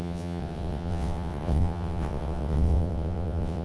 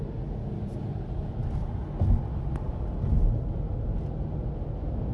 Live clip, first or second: second